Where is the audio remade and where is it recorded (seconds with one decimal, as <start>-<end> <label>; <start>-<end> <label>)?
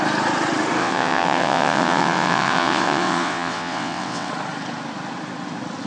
0.0-0.8 recorded; 0.8-4.3 remade; 4.3-5.9 recorded